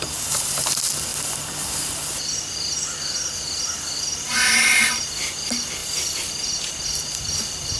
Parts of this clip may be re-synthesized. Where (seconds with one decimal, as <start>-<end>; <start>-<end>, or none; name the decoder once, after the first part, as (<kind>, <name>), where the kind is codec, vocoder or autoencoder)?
none